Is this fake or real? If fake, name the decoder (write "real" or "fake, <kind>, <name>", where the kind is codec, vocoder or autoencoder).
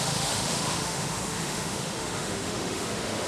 fake, autoencoder, DAC-VAE